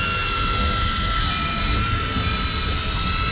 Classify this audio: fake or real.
real